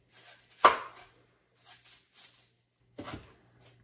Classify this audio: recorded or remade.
recorded